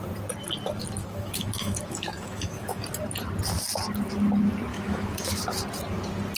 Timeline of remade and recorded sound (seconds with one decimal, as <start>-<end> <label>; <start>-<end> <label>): 0.0-1.0 recorded; 1.0-2.8 remade; 2.8-4.7 recorded; 4.7-5.4 remade; 5.4-6.4 recorded